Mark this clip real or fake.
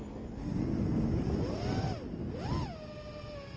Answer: real